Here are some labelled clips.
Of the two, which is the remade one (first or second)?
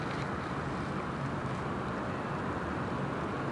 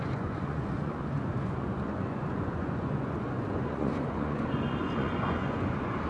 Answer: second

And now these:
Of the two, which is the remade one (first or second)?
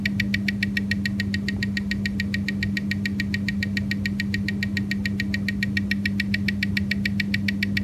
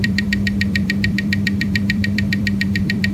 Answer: second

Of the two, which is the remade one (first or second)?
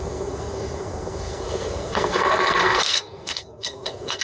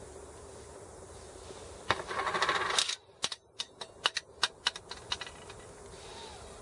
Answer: first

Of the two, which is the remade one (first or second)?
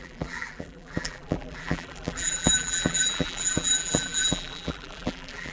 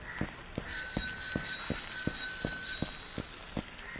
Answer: first